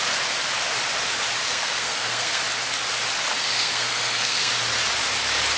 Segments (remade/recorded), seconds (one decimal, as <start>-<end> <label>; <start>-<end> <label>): 0.0-1.5 recorded; 1.5-2.4 remade; 2.4-3.3 recorded; 3.3-4.5 remade; 4.5-5.6 recorded